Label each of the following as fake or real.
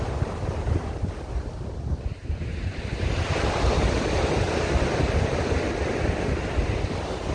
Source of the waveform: real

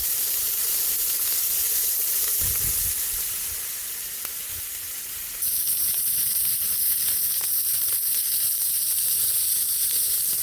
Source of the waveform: real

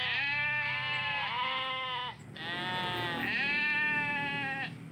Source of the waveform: real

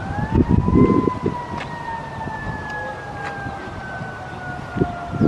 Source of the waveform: real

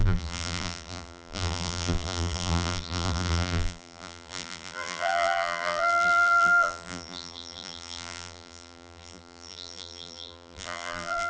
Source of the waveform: fake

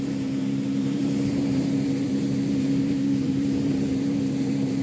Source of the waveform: fake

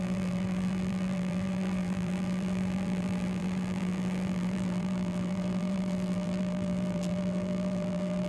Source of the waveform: fake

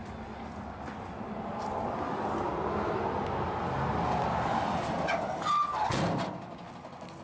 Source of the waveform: real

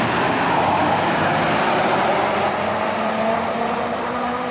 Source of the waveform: real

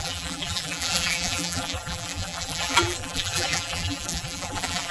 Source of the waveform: fake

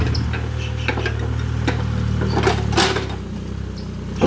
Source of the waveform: real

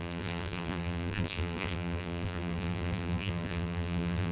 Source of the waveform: fake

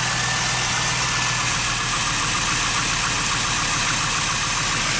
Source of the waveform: real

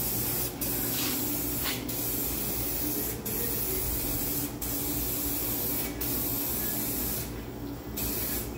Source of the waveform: real